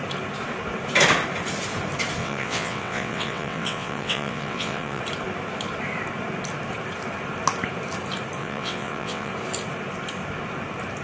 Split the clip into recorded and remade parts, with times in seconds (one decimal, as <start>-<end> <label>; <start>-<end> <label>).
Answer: 0.0-2.2 recorded; 2.2-5.0 remade; 5.0-8.4 recorded; 8.4-9.3 remade; 9.3-11.0 recorded